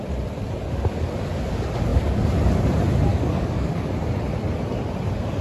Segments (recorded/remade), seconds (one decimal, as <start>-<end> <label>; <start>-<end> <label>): 0.0-3.1 recorded; 3.1-3.9 remade; 3.9-5.4 recorded